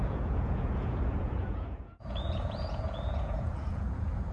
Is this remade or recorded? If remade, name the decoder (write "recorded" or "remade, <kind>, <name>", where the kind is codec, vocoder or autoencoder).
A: remade, vocoder, Vocos